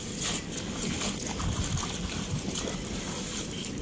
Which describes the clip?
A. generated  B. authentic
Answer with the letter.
B